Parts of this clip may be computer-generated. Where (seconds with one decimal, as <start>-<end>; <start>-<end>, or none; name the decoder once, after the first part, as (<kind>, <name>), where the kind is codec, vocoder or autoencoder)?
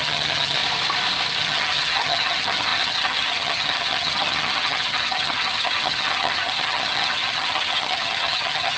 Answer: 0.0-0.6 (vocoder, HiFi-GAN); 1.4-8.8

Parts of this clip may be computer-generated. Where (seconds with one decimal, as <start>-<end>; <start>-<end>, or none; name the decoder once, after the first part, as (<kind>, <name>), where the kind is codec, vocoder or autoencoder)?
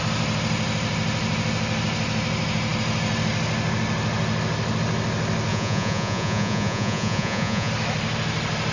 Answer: 5.5-7.7 (vocoder, Vocos)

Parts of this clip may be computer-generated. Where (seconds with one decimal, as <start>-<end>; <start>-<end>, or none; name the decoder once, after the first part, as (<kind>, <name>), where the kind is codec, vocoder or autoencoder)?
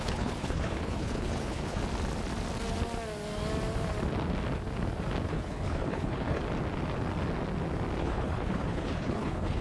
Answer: 0.0-1.8 (codec, HILCodec); 5.3-6.4; 8.0-9.6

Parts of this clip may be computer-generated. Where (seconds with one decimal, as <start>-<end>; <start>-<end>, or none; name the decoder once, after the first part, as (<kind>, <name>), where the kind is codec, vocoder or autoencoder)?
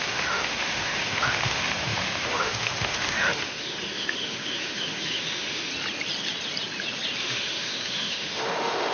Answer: 0.0-5.7 (autoencoder, DAC-VAE); 7.2-8.9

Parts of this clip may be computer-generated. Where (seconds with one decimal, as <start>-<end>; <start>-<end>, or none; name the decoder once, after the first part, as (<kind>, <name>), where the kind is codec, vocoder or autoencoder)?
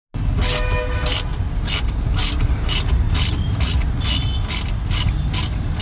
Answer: none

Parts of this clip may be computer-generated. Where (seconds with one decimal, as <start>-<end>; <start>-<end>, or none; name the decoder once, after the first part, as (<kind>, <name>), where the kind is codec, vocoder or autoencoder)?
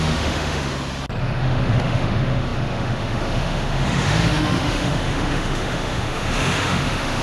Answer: 0.0-0.7 (autoencoder, DAC-VAE); 1.2-7.2